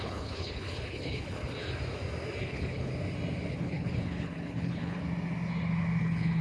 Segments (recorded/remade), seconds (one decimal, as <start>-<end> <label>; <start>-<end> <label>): 0.0-1.6 remade; 1.6-2.4 recorded; 2.4-2.9 remade; 2.9-3.5 recorded; 3.5-5.0 remade; 5.0-6.0 recorded; 6.0-6.4 remade